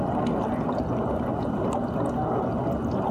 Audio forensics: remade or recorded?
recorded